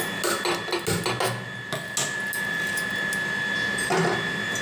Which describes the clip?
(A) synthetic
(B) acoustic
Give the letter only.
B